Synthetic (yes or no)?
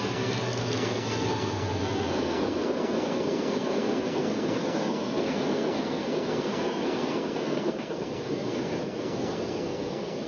yes